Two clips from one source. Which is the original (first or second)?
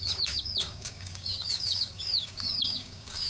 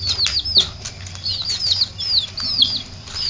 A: second